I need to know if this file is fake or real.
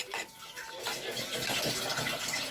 real